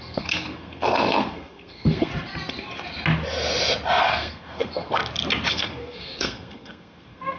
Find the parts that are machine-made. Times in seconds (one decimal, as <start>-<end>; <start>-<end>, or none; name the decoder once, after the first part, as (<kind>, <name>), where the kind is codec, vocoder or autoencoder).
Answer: 0.0-2.1 (codec, SNAC); 4.0-5.0; 5.5-7.4